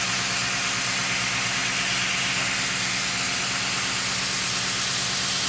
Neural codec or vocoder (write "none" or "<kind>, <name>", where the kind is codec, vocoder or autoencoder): none